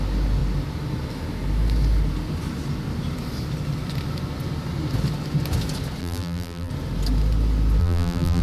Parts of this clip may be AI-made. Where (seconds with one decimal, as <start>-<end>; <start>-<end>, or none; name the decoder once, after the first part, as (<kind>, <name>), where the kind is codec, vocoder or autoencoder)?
6.0-6.7 (vocoder, BigVGAN v2); 7.8-8.4